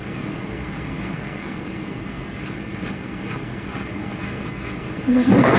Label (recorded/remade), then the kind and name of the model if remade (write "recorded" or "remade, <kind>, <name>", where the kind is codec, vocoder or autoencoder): remade, codec, SNAC